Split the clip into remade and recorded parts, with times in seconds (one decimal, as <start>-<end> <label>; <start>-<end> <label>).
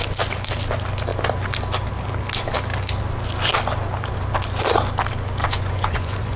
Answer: 0.0-5.4 recorded; 5.4-6.4 remade